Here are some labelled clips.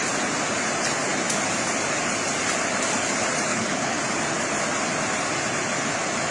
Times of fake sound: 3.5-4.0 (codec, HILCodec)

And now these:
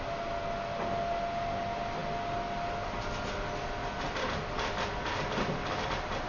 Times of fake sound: none